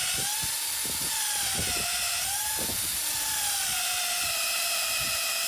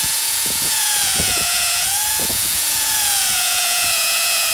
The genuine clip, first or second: first